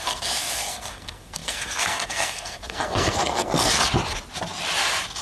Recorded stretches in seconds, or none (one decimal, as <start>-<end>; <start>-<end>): 3.8-5.2